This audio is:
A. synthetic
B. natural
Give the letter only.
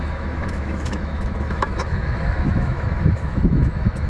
A